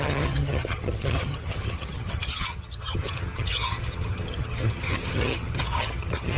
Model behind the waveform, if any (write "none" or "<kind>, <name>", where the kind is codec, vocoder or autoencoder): vocoder, HiFi-GAN